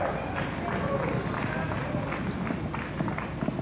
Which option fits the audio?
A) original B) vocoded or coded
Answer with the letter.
A